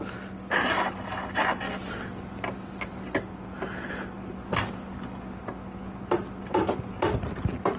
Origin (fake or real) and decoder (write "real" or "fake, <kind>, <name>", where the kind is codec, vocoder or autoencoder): real